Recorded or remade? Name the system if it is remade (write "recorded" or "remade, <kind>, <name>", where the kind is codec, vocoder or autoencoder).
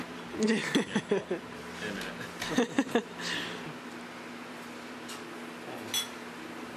recorded